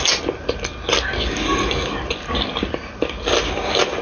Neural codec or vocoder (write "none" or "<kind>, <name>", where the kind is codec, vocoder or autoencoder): none